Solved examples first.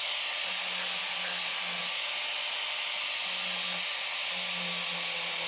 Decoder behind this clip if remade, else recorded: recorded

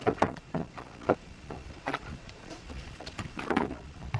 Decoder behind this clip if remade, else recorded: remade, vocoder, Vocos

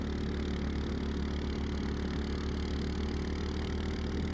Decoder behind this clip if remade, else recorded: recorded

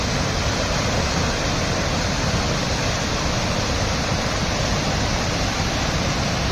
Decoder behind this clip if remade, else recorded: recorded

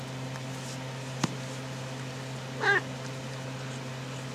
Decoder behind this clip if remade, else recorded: recorded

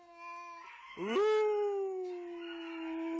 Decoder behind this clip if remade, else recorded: recorded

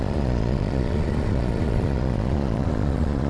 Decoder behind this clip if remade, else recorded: remade, vocoder, Vocos